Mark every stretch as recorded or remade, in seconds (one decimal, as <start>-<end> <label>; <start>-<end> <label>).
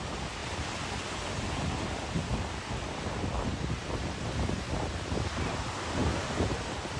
0.0-7.0 recorded